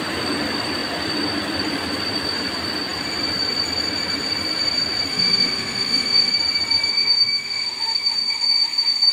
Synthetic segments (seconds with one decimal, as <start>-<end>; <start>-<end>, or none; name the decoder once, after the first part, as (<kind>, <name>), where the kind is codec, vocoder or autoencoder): 5.1-6.3 (autoencoder, DAC-VAE); 6.9-9.1